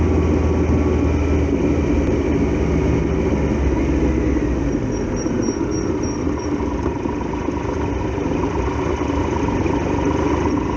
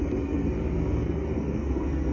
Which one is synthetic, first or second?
second